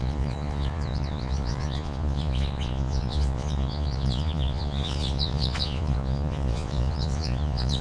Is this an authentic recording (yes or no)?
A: no